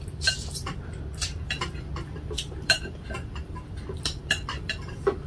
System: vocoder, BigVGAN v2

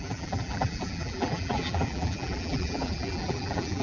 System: vocoder, BigVGAN v2